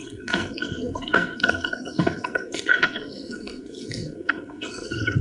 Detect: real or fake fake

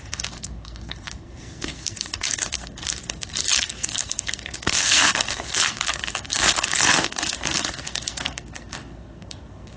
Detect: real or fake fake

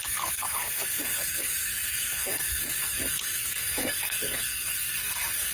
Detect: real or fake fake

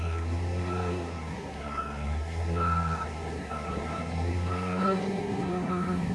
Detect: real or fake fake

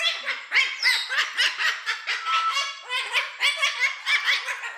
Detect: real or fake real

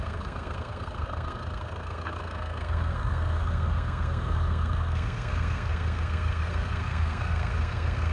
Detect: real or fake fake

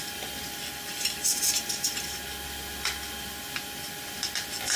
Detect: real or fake real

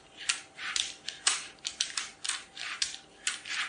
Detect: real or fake real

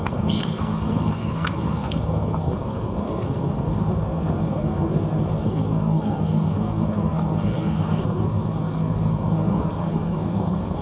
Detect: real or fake fake